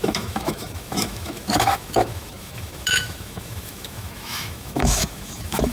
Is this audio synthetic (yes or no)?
yes